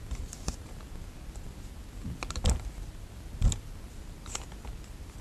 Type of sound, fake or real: real